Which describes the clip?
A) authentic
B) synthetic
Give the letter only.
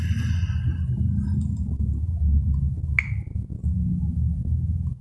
A